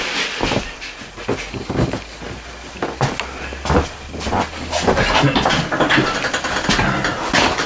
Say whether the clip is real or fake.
real